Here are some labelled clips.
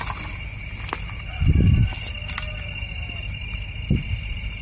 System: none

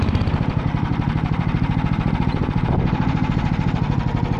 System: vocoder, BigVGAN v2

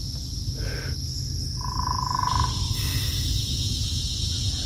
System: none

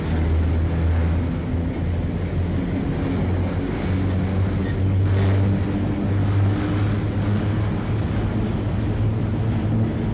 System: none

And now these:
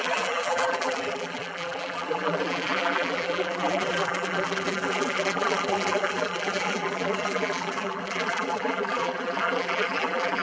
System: vocoder, BigVGAN v2